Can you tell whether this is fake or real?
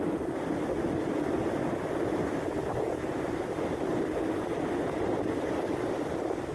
real